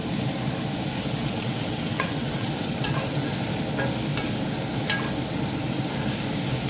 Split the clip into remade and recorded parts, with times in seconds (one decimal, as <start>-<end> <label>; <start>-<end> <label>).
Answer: 0.0-1.2 recorded; 1.2-3.3 remade; 3.3-6.7 recorded